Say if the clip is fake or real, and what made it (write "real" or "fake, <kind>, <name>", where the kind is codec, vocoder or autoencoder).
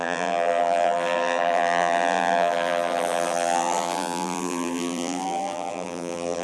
fake, vocoder, BigVGAN v2